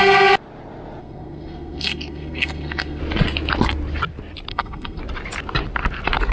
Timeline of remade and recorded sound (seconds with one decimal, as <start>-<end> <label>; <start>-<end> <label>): 0.0-1.0 recorded; 1.0-3.0 remade; 3.0-4.5 recorded; 4.5-5.0 remade; 5.0-6.3 recorded